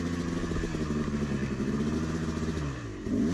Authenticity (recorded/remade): recorded